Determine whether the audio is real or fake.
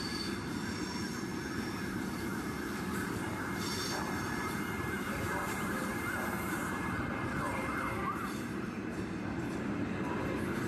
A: fake